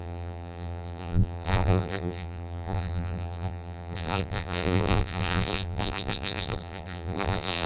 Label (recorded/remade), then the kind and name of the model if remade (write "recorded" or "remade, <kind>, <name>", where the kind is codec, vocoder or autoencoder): remade, vocoder, BigVGAN v2